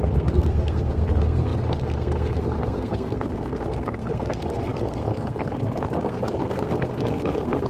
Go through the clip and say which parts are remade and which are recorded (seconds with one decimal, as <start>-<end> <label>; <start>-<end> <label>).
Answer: 0.0-7.7 remade